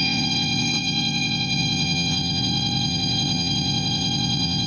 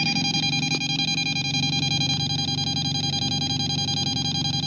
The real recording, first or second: second